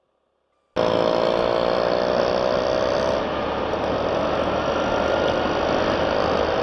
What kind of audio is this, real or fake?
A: real